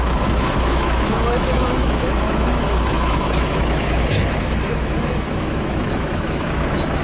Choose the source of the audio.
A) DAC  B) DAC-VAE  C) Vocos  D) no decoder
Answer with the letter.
B